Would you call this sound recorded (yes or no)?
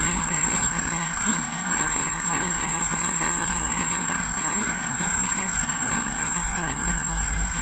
no